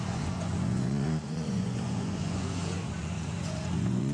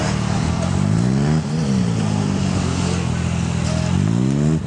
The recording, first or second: second